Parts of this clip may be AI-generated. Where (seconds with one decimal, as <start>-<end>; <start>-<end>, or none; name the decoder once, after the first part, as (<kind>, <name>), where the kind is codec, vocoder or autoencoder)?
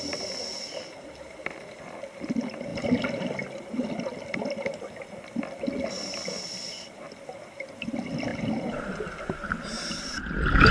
0.0-2.7 (vocoder, BigVGAN v2); 6.7-10.7